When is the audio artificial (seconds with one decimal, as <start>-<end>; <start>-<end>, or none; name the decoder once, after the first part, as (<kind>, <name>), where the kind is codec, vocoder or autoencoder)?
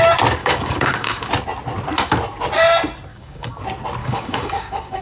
0.4-1.3 (codec, DAC); 3.1-3.6; 4.0-5.0